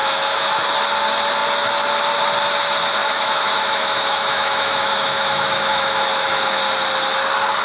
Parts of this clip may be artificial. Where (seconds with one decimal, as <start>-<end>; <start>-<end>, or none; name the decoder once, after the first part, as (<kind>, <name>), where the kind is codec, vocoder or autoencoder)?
0.0-0.7 (autoencoder, DAC-VAE); 3.0-6.6